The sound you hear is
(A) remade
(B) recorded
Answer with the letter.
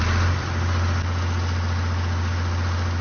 B